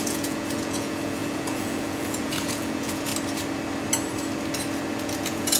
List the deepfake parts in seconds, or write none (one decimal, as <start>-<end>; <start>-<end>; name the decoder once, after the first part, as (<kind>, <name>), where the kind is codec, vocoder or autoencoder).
0.0-3.1 (vocoder, Vocos); 5.0-5.6